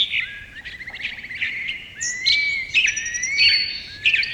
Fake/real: real